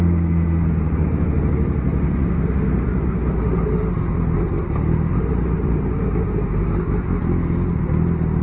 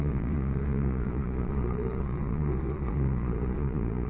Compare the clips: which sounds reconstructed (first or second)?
second